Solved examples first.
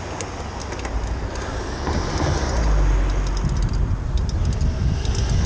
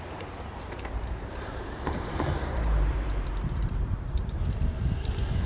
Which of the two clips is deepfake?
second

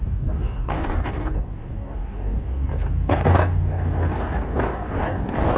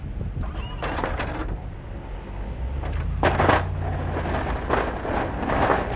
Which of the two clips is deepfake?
first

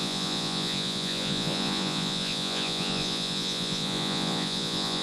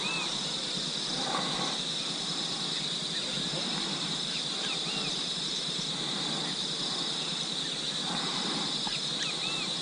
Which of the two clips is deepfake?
first